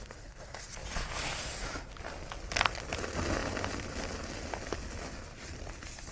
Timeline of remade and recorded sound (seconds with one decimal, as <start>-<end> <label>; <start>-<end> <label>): 0.0-6.1 recorded